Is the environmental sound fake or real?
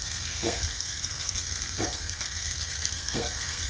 fake